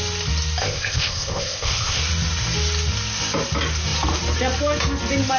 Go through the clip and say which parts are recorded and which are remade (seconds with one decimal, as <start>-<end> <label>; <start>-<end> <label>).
0.0-0.6 recorded; 0.6-2.0 remade; 2.0-5.4 recorded